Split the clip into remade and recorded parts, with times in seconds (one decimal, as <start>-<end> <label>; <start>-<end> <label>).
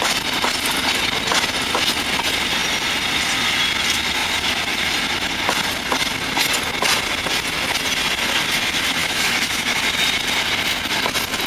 0.0-9.0 recorded; 9.0-9.8 remade; 9.8-11.5 recorded